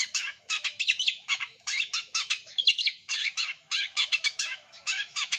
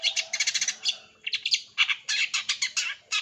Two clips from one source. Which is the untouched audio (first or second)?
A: second